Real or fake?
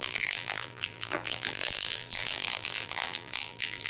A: fake